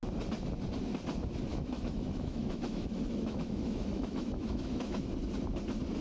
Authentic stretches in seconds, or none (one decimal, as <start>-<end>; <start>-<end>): 0.0-1.5; 5.1-6.0